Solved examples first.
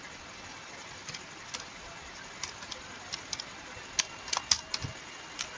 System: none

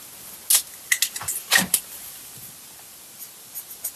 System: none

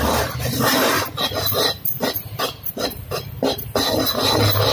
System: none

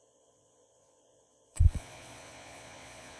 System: vocoder, Vocos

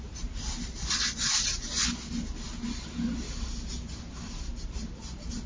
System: none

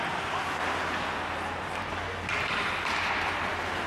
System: none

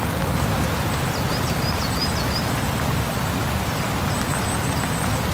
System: none